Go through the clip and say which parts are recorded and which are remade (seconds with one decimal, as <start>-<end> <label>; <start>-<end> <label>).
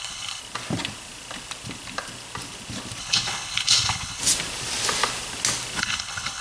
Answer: 0.0-0.4 remade; 0.4-3.0 recorded; 3.0-4.2 remade; 4.2-5.8 recorded; 5.8-6.4 remade